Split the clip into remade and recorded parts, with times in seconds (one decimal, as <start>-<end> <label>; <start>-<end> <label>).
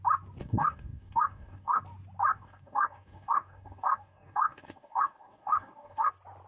0.0-0.4 recorded; 0.4-1.8 remade; 1.8-2.3 recorded; 2.3-6.1 remade; 6.1-6.5 recorded